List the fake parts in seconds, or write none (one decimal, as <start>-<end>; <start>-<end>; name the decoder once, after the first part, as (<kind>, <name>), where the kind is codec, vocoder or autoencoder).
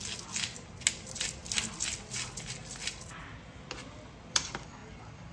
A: none